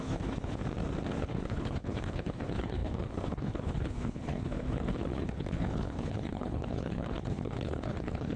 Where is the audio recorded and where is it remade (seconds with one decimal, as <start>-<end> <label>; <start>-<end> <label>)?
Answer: 0.0-0.6 remade; 0.6-1.2 recorded; 1.2-8.4 remade